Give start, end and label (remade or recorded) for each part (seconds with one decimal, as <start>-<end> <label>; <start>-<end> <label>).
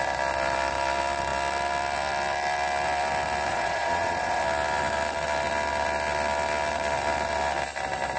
0.0-3.5 recorded; 3.5-4.4 remade; 4.4-8.2 recorded